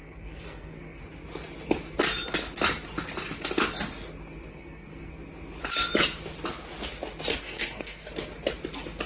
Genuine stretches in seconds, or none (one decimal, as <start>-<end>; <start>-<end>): 1.0-4.5; 5.1-7.4; 8.1-9.1